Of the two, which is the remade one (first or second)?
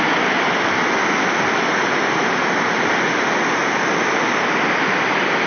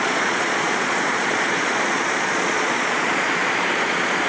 second